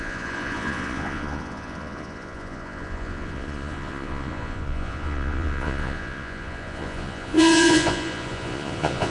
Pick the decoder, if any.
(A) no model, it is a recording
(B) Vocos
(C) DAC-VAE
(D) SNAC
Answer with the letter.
B